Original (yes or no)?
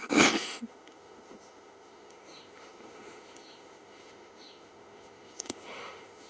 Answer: no